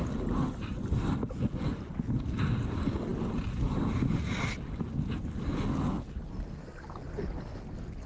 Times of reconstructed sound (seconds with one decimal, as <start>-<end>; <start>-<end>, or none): none